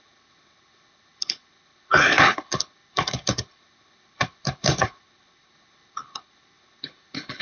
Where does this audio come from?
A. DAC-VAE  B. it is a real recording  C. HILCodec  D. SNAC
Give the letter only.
C